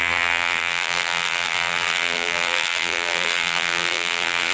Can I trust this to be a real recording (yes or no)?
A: no